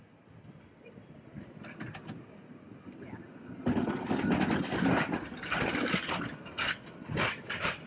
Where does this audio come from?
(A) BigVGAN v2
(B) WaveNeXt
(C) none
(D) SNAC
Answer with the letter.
C